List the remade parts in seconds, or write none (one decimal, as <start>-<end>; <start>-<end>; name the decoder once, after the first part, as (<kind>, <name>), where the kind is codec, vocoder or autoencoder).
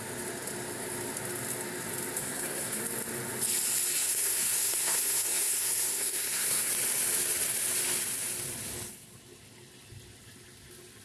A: 2.2-2.8 (codec, SNAC); 4.0-6.7